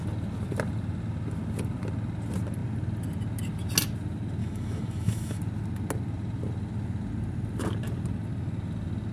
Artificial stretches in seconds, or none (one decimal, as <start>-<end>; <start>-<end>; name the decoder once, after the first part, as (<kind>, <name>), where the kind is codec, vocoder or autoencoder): 4.4-5.4 (autoencoder, DAC-VAE)